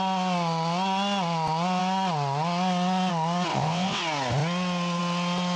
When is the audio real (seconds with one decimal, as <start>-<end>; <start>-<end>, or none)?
0.0-3.5; 4.0-5.6